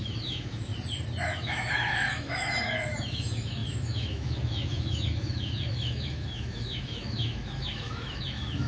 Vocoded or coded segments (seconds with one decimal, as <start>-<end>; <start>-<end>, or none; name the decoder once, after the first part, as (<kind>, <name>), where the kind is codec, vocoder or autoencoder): 0.0-0.7 (autoencoder, DAC-VAE); 1.2-8.7